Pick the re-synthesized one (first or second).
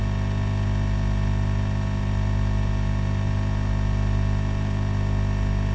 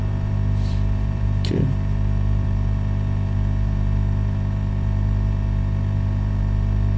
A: second